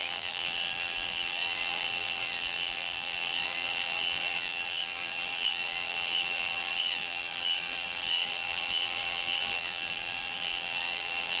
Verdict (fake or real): fake